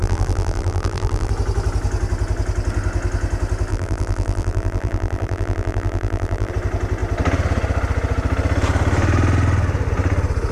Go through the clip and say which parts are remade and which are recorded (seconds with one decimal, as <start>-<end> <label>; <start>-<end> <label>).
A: 0.0-1.3 remade; 1.3-3.7 recorded; 3.7-6.5 remade; 6.5-10.5 recorded